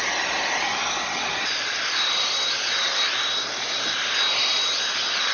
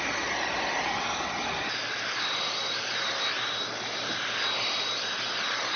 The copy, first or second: second